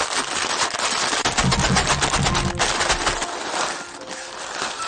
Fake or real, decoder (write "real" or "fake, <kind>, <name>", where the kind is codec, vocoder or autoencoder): real